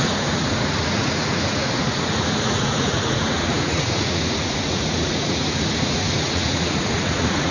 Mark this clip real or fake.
fake